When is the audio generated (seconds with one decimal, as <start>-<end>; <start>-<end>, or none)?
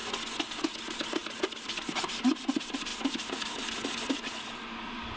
1.2-1.7; 2.9-5.2